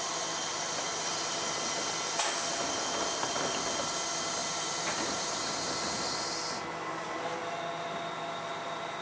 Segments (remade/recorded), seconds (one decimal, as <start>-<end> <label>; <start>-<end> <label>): 0.0-4.4 recorded; 4.4-5.7 remade; 5.7-9.0 recorded